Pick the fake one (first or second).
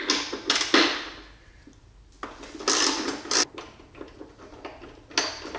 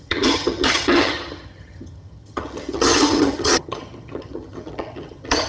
second